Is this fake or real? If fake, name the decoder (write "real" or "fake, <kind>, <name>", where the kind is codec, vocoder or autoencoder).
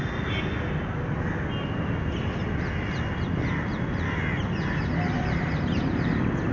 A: real